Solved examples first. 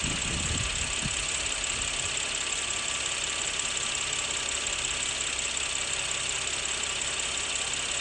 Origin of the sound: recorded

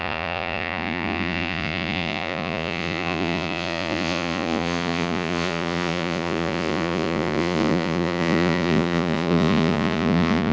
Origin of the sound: remade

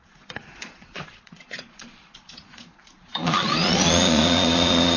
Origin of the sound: remade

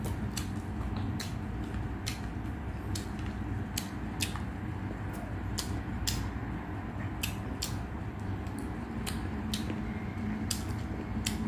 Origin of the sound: recorded